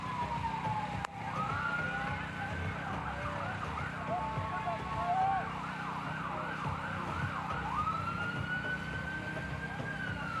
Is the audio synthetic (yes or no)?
no